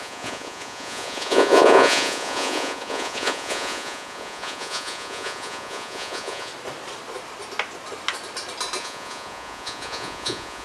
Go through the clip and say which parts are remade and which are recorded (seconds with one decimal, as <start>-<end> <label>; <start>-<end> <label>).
0.0-6.5 remade; 6.5-8.8 recorded; 8.8-10.6 remade